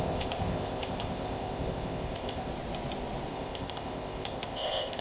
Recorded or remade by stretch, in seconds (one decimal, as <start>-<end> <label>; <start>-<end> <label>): 0.0-2.5 remade; 2.5-3.3 recorded; 3.3-5.0 remade